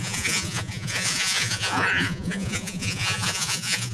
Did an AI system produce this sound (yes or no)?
yes